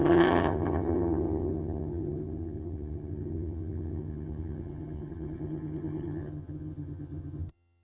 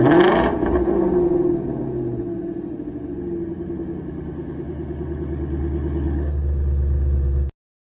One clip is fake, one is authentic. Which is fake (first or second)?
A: first